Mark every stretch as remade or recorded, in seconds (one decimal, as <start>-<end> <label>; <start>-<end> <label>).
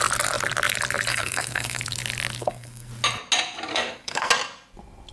0.0-1.1 recorded; 1.1-1.8 remade; 1.8-2.4 recorded; 2.4-2.9 remade; 2.9-3.7 recorded; 3.7-4.3 remade; 4.3-5.1 recorded